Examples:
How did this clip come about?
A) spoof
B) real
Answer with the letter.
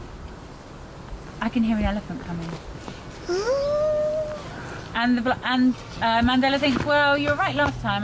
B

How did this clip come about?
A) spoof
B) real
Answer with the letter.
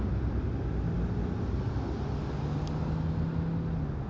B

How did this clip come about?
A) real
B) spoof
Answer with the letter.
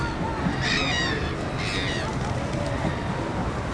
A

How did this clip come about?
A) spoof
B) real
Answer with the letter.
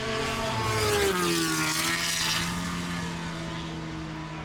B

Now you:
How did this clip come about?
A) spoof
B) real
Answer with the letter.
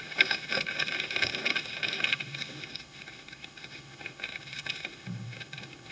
A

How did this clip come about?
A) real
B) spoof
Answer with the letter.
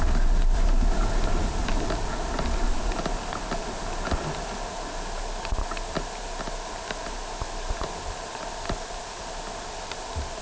A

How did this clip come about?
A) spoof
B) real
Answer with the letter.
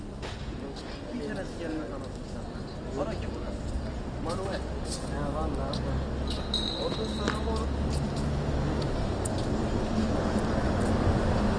B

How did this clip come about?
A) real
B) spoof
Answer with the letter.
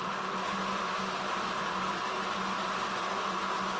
A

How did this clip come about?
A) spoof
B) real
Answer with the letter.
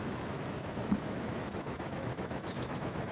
A